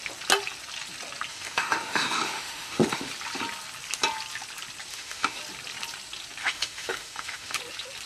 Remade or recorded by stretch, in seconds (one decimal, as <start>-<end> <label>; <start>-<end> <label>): 0.0-1.3 recorded; 1.3-3.1 remade; 3.1-4.9 recorded; 4.9-5.4 remade; 5.4-6.4 recorded; 6.4-7.6 remade; 7.6-8.1 recorded

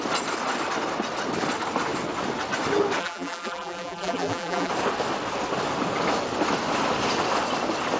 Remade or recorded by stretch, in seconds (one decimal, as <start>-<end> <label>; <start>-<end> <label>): 0.0-3.0 recorded; 3.0-4.7 remade; 4.7-8.0 recorded

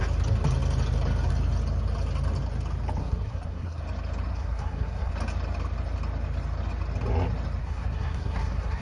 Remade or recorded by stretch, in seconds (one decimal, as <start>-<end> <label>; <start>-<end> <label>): 0.0-3.0 recorded; 3.0-3.8 remade; 3.8-4.3 recorded; 4.3-5.1 remade; 5.1-7.6 recorded; 7.6-8.8 remade

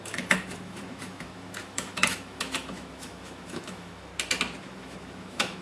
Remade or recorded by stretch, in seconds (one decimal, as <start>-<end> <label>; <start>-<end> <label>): 0.0-4.1 remade; 4.1-4.6 recorded; 4.6-5.6 remade

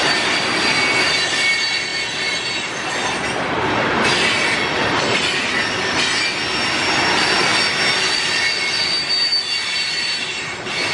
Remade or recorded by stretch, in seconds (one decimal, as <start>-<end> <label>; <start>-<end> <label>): 0.0-10.9 recorded

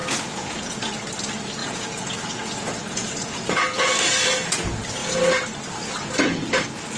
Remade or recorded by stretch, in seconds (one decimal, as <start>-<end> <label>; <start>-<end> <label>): 0.0-0.9 remade; 0.9-1.6 recorded; 1.6-3.8 remade; 3.8-7.0 recorded

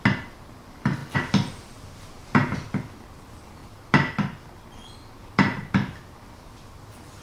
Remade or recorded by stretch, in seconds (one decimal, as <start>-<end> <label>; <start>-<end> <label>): 0.0-3.6 recorded; 3.6-4.6 remade; 4.6-5.2 recorded; 5.2-6.1 remade; 6.1-7.2 recorded